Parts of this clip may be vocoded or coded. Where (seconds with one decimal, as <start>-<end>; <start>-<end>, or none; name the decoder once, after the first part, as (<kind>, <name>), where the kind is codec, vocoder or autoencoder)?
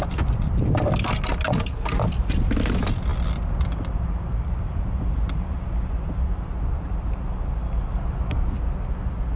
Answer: none